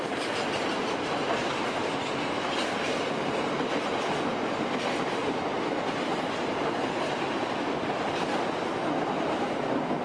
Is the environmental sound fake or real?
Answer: real